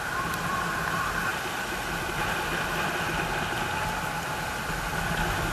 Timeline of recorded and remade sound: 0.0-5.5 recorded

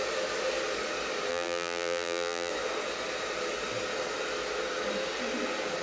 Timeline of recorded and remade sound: 0.0-1.3 recorded; 1.3-2.5 remade; 2.5-5.8 recorded